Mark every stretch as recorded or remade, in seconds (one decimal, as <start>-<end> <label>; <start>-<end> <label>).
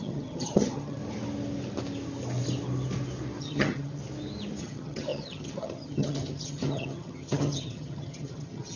0.0-1.0 remade; 1.0-3.4 recorded; 3.4-4.0 remade; 4.0-4.6 recorded; 4.6-8.8 remade